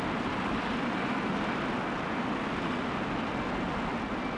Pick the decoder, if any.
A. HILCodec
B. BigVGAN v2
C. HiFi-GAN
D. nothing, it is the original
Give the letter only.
D